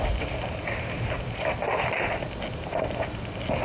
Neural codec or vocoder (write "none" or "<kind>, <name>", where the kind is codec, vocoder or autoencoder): vocoder, BigVGAN v2